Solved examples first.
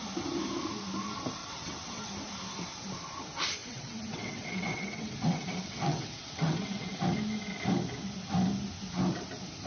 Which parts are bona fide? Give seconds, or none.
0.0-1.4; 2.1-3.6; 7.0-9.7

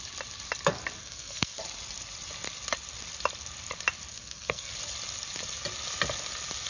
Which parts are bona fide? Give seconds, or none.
0.0-1.0; 1.6-4.1; 4.7-6.7

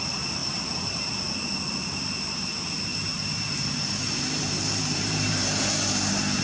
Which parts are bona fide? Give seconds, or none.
0.0-0.4; 1.1-2.9

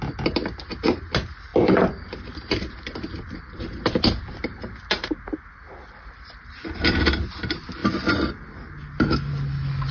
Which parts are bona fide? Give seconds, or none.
0.0-9.9

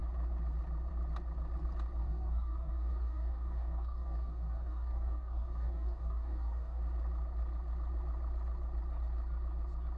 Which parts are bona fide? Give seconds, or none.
0.0-2.0; 6.8-10.0